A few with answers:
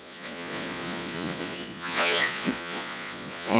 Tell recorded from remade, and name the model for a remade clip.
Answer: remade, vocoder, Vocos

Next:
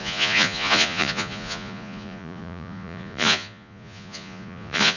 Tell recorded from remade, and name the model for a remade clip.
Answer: remade, vocoder, Vocos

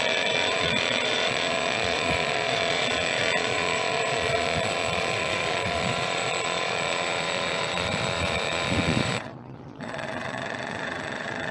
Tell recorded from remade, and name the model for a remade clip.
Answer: remade, vocoder, Vocos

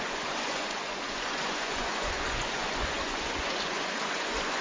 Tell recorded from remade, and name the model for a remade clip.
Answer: remade, vocoder, Vocos